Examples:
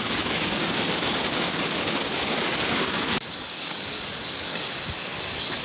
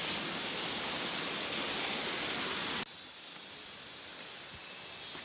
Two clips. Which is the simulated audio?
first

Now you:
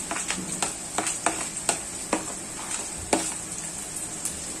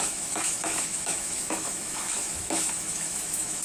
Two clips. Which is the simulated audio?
second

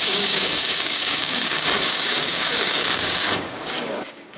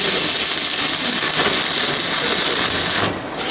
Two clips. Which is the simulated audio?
first